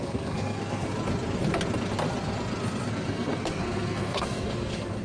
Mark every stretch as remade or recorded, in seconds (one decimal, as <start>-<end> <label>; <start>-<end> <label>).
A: 0.0-0.9 remade; 0.9-2.9 recorded; 2.9-5.0 remade